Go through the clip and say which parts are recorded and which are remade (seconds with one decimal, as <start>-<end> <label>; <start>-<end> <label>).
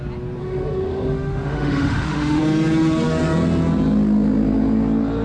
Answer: 0.0-0.4 recorded; 0.4-2.4 remade; 2.4-5.2 recorded